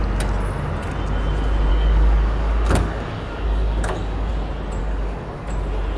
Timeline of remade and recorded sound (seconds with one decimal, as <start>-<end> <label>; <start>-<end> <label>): 0.0-1.7 recorded; 1.7-4.3 remade; 4.3-4.8 recorded; 4.8-5.5 remade; 5.5-6.0 recorded